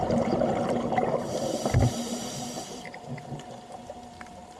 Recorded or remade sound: remade